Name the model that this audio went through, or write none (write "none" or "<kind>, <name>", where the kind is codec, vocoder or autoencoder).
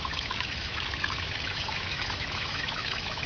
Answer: autoencoder, DAC-VAE